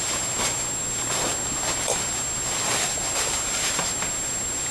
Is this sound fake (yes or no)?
no